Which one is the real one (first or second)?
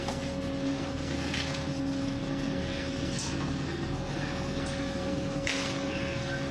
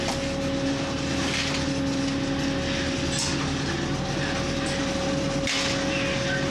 second